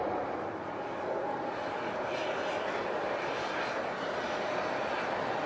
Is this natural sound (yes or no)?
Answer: yes